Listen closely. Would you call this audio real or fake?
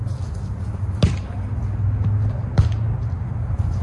real